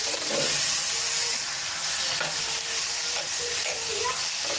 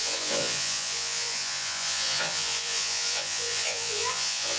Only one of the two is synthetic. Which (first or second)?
second